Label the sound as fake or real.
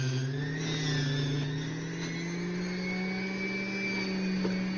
real